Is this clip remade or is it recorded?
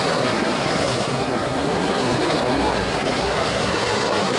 remade